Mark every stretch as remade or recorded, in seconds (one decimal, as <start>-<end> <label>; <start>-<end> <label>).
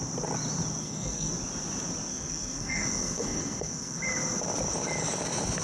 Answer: 0.0-0.8 recorded; 0.8-1.3 remade; 1.3-2.1 recorded; 2.1-4.0 remade; 4.0-5.6 recorded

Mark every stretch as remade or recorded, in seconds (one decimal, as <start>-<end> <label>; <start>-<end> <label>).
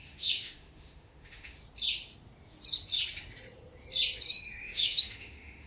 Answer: 0.0-1.6 remade; 1.6-4.3 recorded; 4.3-5.7 remade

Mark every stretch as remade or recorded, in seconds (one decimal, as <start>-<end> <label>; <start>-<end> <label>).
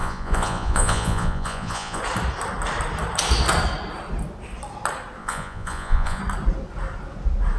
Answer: 0.0-2.0 remade; 2.0-5.2 recorded; 5.2-6.2 remade; 6.2-7.6 recorded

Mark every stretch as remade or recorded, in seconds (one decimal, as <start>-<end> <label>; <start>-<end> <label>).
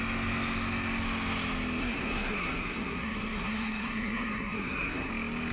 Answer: 0.0-1.8 recorded; 1.8-5.1 remade; 5.1-5.5 recorded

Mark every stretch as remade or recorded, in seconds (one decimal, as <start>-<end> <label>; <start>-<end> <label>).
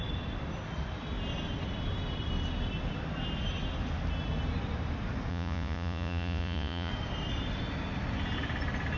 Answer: 0.0-5.3 recorded; 5.3-6.9 remade; 6.9-9.0 recorded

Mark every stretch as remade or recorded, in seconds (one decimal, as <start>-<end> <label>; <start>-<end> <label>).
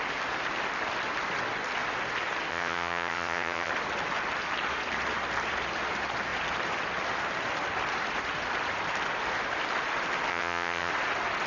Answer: 0.0-2.5 recorded; 2.5-3.7 remade; 3.7-10.3 recorded; 10.3-10.9 remade; 10.9-11.5 recorded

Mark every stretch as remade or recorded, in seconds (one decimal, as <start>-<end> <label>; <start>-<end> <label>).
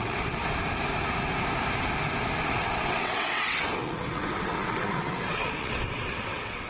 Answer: 0.0-0.4 remade; 0.4-2.5 recorded; 2.5-6.7 remade